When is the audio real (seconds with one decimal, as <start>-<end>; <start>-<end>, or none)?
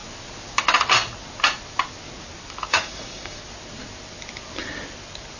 0.0-2.7; 3.4-5.4